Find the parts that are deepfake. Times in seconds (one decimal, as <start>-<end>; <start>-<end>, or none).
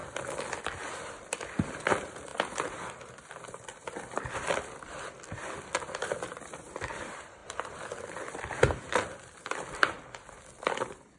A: 0.8-11.2